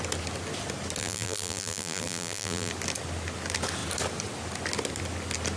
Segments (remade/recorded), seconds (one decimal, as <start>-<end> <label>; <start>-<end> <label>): 0.0-1.0 recorded; 1.0-2.7 remade; 2.7-5.6 recorded